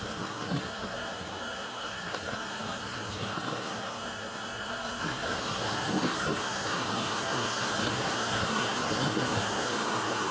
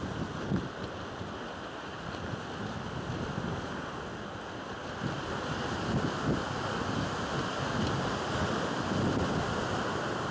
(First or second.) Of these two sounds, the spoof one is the first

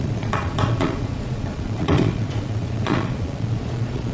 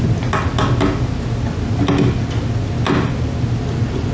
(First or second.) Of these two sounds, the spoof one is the first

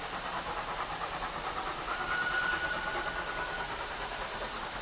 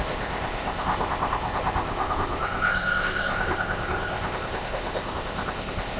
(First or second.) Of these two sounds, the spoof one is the second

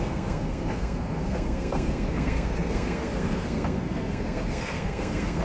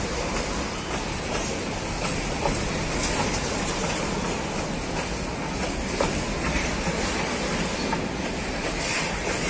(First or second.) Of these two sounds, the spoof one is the first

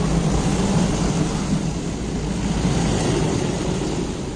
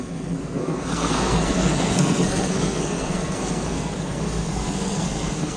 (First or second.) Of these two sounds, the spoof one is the second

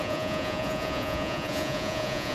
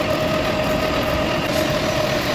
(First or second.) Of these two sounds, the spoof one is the first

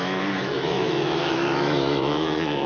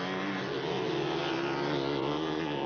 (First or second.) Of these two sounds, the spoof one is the first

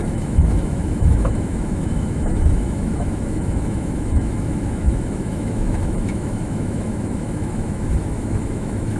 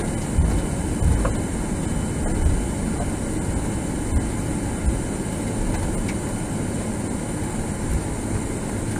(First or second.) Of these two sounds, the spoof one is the first